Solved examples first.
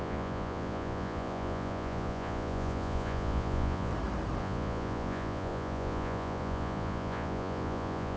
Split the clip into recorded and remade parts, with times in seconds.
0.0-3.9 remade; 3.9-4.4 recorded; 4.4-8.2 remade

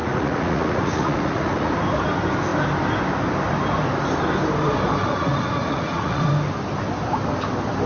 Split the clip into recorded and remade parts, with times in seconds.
0.0-1.7 remade; 1.7-5.0 recorded; 5.0-6.3 remade; 6.3-7.9 recorded

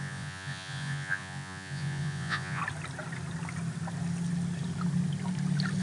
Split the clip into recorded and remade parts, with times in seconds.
0.0-2.6 remade; 2.6-5.8 recorded

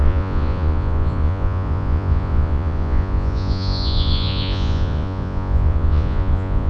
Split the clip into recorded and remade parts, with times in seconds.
0.0-6.7 remade

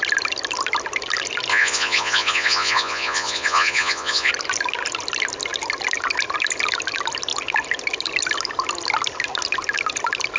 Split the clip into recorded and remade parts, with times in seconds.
0.0-1.5 recorded; 1.5-4.3 remade; 4.3-10.4 recorded

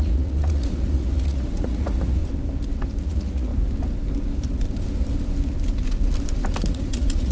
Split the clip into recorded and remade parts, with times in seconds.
0.0-2.2 remade; 2.2-3.0 recorded; 3.0-3.5 remade; 3.5-6.7 recorded; 6.7-7.3 remade

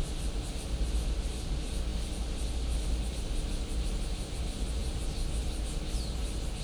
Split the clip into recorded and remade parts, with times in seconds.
0.0-6.6 recorded

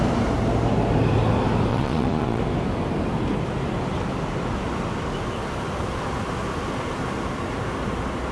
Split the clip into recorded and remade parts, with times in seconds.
0.0-1.7 recorded; 1.7-2.4 remade; 2.4-8.3 recorded